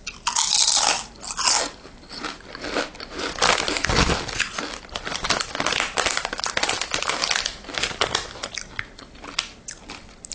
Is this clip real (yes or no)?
yes